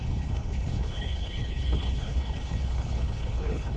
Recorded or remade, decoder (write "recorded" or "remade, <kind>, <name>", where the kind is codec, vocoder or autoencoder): remade, codec, HILCodec